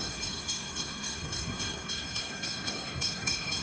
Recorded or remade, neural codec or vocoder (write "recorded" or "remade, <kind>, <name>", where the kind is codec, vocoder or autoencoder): remade, codec, SNAC